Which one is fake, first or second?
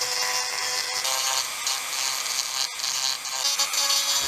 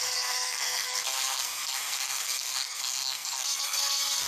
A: second